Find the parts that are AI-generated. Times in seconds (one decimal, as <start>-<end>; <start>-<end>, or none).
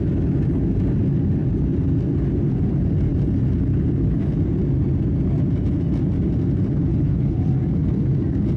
6.9-7.5